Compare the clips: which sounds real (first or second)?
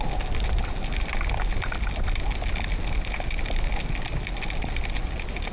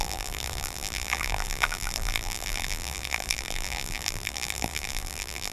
first